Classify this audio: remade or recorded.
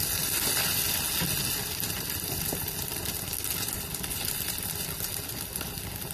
recorded